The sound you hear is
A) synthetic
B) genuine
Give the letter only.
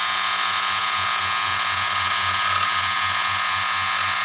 A